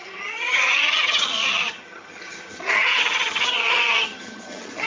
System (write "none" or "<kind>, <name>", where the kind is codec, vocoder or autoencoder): vocoder, HiFi-GAN